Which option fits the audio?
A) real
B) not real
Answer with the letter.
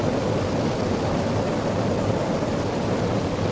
A